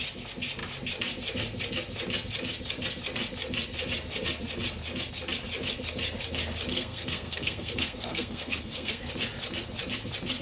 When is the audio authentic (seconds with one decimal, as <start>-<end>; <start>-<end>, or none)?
0.0-6.7; 9.1-10.4